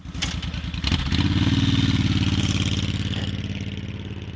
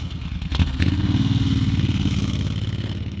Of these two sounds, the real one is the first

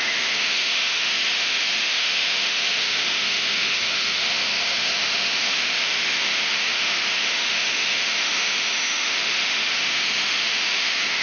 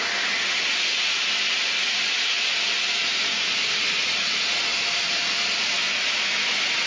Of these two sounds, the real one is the second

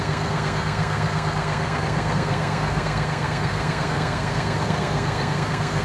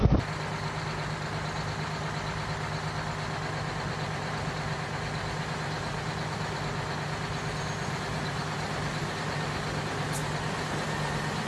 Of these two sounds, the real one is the second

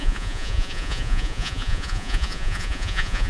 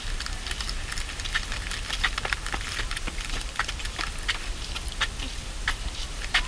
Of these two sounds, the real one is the second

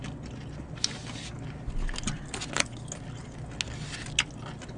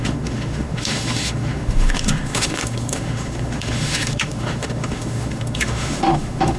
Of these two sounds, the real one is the first